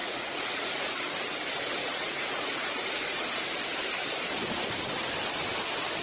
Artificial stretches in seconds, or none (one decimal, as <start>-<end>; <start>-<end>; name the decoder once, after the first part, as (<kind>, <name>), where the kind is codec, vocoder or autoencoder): 0.0-1.2 (vocoder, Vocos); 1.8-3.3